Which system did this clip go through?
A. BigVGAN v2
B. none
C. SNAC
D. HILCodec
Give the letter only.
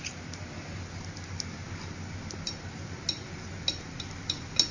B